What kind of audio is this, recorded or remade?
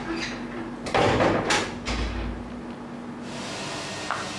recorded